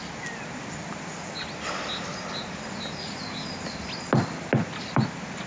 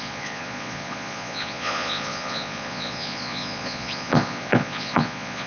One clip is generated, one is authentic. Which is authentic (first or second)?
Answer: first